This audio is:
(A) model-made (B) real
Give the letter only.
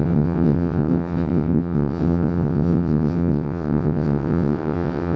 A